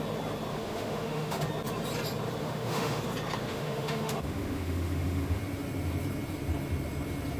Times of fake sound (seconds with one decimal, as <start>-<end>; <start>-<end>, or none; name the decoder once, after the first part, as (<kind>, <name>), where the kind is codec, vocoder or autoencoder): 0.5-1.4 (autoencoder, DAC-VAE); 2.4-3.0; 3.4-5.4